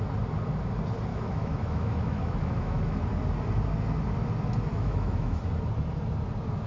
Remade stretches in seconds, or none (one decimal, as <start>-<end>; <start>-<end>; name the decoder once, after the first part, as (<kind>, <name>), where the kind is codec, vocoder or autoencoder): 1.1-3.0 (autoencoder, DAC-VAE); 4.7-5.4